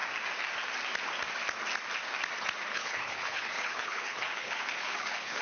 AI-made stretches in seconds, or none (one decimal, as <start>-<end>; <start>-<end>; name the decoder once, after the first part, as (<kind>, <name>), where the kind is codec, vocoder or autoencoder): 2.7-5.4 (codec, HILCodec)